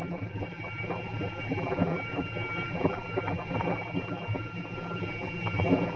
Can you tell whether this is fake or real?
fake